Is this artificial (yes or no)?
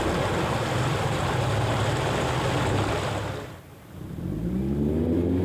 no